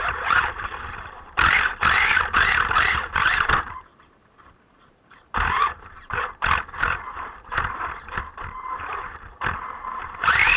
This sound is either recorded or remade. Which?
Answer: remade